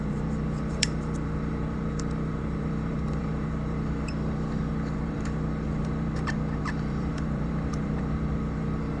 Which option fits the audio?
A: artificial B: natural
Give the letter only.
A